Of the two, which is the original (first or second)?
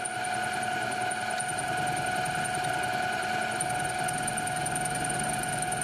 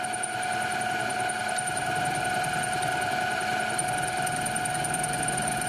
first